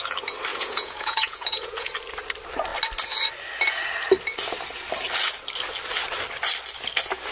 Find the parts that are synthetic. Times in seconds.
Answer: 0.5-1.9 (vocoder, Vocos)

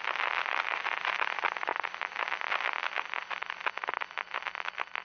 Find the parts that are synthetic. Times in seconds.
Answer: 0.0-1.7 (vocoder, BigVGAN v2)

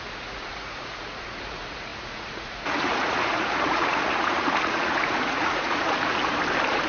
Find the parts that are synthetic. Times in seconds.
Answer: 0.0-6.2 (vocoder, Vocos)

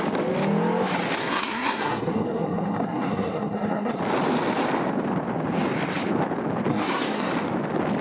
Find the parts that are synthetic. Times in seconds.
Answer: 1.2-4.0 (codec, SNAC); 6.7-7.3

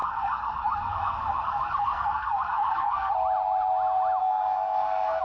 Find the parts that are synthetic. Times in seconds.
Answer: 0.0-3.1 (codec, SNAC); 4.2-5.2